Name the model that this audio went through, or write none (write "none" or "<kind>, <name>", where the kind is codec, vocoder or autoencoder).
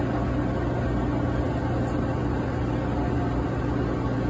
none